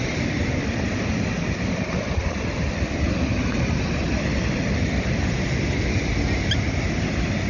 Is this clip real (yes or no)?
yes